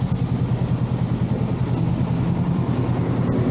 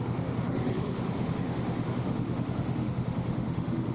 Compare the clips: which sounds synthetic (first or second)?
second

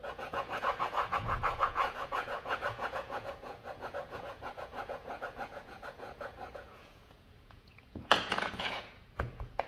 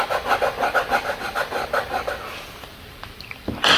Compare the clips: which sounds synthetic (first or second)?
first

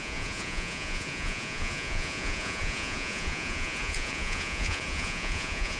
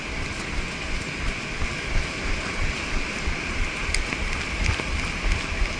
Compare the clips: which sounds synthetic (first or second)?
first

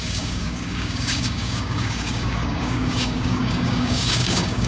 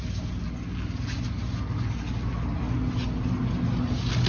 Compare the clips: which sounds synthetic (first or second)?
first